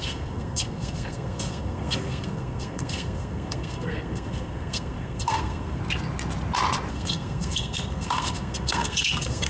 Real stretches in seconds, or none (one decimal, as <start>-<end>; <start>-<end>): 5.8-6.9